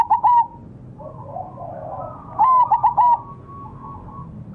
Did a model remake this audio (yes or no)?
no